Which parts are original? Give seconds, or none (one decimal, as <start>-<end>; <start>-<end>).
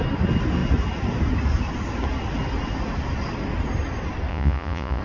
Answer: 0.0-4.3